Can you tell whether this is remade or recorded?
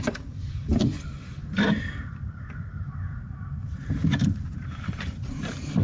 remade